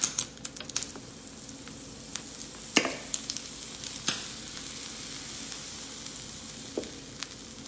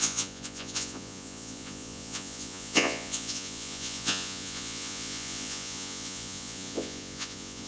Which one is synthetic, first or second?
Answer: second